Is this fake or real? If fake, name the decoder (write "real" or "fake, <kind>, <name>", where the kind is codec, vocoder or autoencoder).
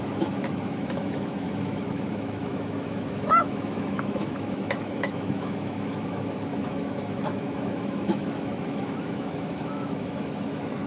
fake, autoencoder, DAC-VAE